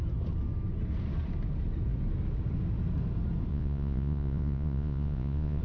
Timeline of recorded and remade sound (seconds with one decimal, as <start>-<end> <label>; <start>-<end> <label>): 0.0-3.5 recorded; 3.5-5.6 remade